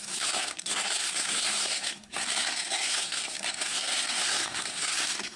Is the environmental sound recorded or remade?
remade